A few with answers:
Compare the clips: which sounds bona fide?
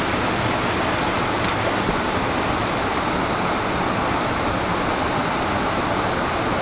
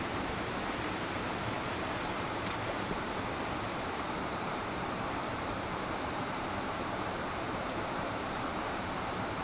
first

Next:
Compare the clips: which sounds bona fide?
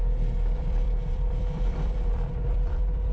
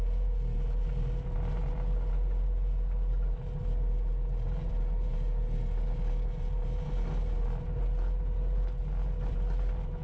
second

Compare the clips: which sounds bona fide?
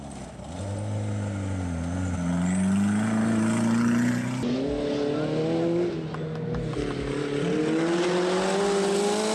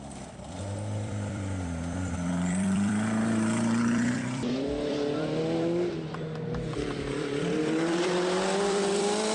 first